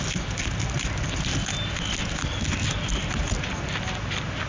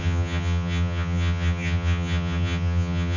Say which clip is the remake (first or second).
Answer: second